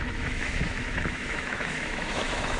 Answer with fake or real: fake